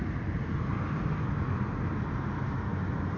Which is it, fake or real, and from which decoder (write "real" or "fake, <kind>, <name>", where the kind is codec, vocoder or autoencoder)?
real